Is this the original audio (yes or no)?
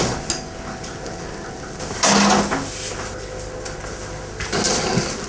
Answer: yes